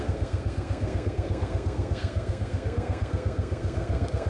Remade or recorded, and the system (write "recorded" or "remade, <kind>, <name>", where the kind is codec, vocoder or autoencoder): remade, codec, SNAC